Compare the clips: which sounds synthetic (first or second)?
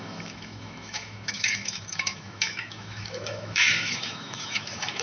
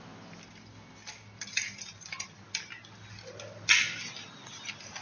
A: first